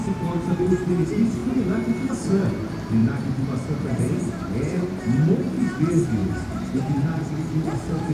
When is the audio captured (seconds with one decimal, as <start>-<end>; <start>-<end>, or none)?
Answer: 0.0-3.0; 5.0-6.2